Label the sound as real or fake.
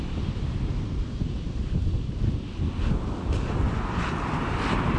real